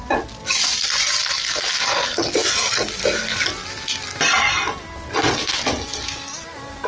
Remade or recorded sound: recorded